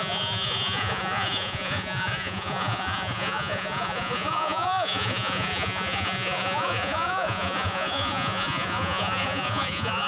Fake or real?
fake